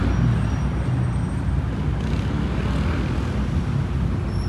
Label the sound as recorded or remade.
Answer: recorded